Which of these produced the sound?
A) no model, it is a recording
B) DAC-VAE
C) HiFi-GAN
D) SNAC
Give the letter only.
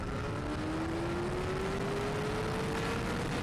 A